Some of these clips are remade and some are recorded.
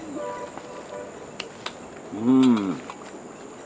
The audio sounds recorded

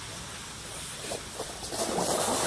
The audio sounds recorded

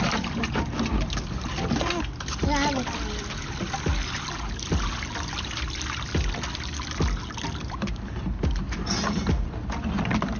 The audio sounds recorded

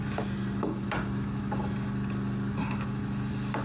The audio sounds recorded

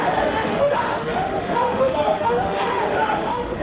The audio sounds remade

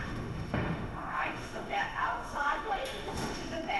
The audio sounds remade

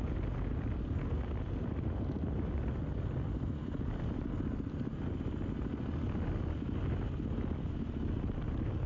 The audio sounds recorded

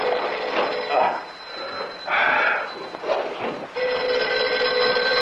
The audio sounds recorded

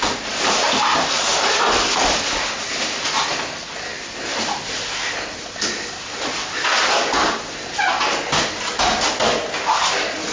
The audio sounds recorded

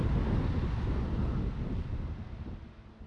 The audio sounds recorded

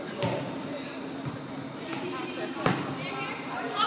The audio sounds recorded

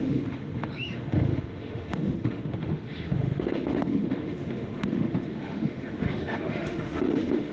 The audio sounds remade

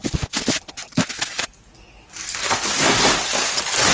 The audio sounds recorded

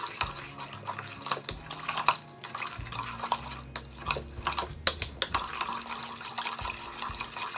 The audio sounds recorded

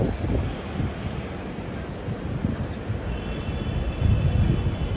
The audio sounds recorded